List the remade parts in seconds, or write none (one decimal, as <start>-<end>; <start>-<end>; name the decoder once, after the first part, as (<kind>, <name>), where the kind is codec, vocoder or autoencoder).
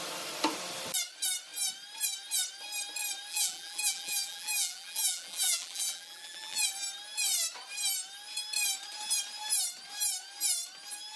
3.3-6.6 (vocoder, BigVGAN v2)